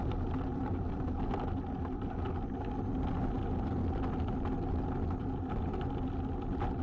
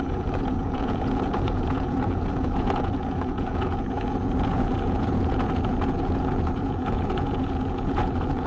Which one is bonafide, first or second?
first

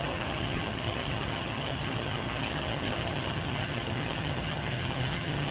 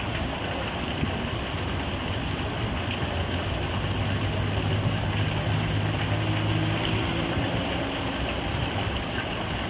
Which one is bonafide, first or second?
second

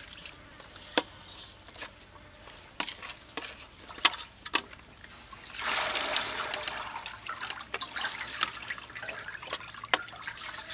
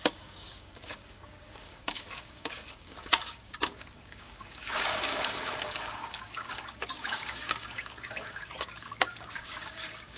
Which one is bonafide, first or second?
first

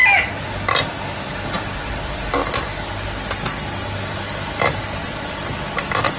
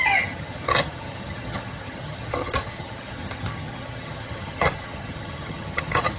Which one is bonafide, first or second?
first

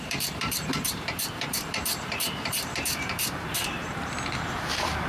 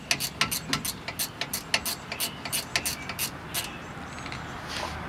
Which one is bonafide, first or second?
second